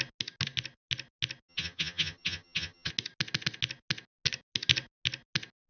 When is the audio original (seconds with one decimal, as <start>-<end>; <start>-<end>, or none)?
0.0-1.5; 2.9-5.7